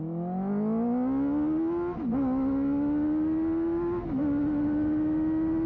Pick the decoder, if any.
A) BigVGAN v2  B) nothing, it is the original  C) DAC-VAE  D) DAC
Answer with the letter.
B